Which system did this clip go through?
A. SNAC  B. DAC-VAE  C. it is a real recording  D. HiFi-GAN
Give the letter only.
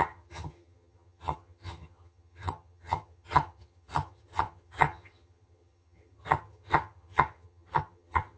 D